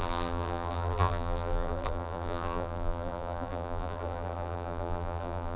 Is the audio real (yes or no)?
no